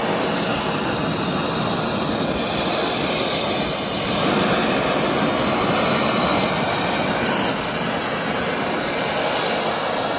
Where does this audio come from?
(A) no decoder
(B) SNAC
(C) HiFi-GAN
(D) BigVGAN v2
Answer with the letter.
A